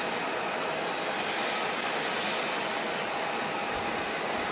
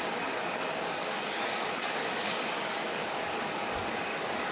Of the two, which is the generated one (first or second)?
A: second